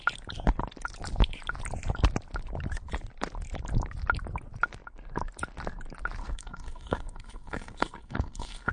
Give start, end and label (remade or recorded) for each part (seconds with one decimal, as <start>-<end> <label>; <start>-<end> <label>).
0.0-6.2 recorded; 6.2-8.7 remade